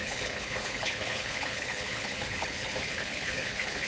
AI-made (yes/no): yes